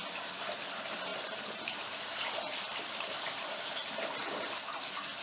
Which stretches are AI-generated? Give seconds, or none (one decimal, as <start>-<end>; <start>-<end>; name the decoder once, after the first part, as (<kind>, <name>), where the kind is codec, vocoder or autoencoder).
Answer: 1.1-4.2 (vocoder, BigVGAN v2)